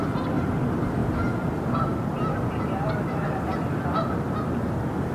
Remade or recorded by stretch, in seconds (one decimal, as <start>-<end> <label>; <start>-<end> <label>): 0.0-5.1 recorded